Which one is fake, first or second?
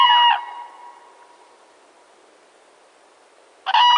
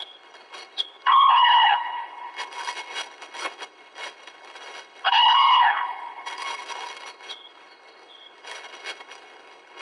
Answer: second